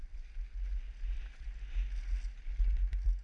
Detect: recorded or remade recorded